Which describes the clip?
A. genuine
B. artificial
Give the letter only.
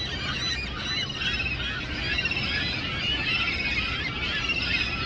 A